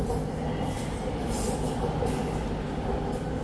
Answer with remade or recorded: recorded